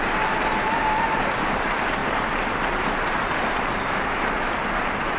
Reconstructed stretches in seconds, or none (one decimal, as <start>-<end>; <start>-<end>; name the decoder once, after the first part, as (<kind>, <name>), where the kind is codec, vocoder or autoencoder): 0.0-2.0 (vocoder, BigVGAN v2); 2.7-5.2

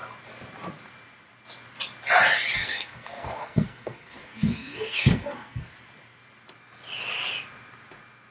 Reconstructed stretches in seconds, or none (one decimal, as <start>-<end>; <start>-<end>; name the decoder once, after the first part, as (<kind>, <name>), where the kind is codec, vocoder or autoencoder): 2.6-5.7 (codec, SNAC)

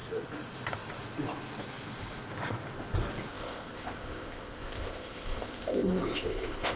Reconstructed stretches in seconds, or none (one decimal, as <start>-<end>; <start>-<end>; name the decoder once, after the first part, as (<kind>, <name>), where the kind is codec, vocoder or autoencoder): 3.3-6.8 (codec, ZipCodec)

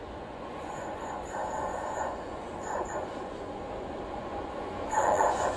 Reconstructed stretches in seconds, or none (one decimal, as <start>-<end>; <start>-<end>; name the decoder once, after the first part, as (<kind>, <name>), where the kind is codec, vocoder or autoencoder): 0.0-5.6 (vocoder, Vocos)

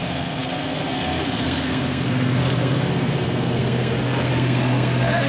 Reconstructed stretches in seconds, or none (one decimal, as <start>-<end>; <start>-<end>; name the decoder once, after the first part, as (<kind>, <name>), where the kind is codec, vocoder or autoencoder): 0.0-5.3 (codec, SNAC)